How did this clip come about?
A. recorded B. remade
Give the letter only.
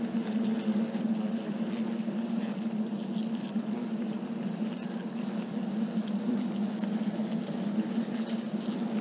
B